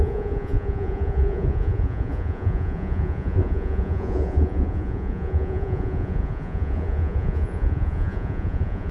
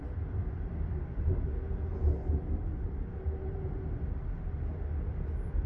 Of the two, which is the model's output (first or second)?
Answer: first